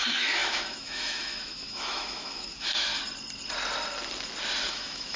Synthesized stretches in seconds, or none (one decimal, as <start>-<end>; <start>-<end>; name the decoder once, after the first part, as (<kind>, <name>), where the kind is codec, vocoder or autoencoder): 0.0-2.9 (autoencoder, DAC-VAE); 4.7-5.2